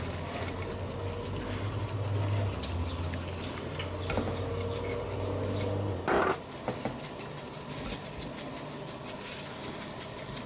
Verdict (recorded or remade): recorded